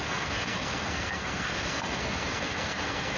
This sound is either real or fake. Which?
fake